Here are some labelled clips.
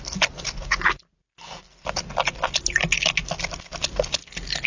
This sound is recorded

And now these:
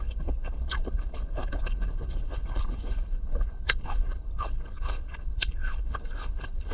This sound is remade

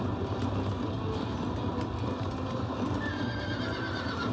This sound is recorded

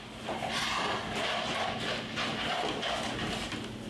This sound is recorded